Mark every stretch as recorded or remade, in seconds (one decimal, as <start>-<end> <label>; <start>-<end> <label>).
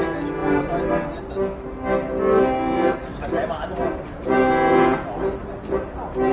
0.0-6.3 recorded